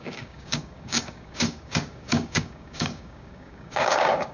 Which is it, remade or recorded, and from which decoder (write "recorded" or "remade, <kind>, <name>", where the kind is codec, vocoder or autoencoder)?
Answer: remade, codec, DAC